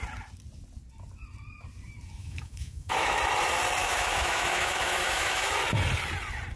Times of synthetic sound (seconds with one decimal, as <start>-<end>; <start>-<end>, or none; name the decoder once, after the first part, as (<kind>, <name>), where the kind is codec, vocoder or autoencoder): 2.2-3.2 (autoencoder, DAC-VAE); 3.8-5.5